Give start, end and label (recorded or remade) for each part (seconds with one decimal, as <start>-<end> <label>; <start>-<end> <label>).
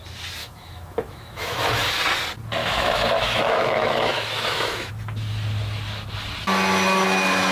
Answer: 0.0-0.4 recorded; 0.4-1.9 remade; 1.9-2.6 recorded; 2.6-4.9 remade; 4.9-7.5 recorded